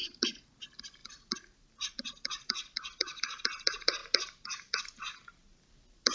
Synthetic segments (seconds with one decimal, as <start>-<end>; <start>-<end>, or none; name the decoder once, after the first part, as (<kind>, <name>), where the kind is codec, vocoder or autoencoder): 1.0-1.9 (vocoder, BigVGAN v2); 4.0-4.8